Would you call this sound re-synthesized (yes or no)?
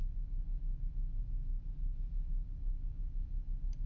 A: no